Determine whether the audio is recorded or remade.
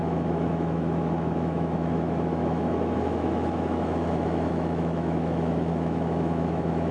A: remade